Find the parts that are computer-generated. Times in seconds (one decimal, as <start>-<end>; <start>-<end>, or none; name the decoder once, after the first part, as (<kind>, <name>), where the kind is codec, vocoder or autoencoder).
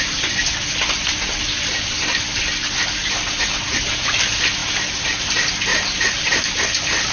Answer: 4.6-5.2 (vocoder, BigVGAN v2); 5.7-6.5